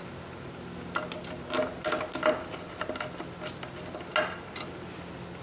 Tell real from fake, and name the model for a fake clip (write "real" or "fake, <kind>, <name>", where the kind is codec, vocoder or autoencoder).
real